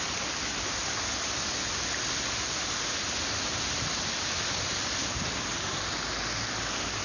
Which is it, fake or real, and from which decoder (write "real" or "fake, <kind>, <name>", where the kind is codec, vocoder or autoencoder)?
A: real